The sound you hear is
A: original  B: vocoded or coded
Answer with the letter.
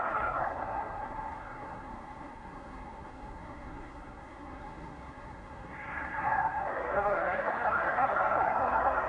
B